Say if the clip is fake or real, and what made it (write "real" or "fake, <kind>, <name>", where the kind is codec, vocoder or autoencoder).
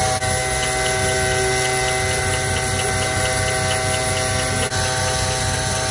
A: real